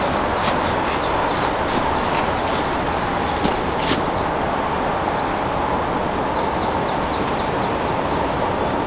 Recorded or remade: recorded